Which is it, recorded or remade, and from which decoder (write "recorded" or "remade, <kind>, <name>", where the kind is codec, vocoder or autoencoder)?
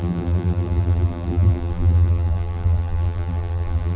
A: remade, vocoder, BigVGAN v2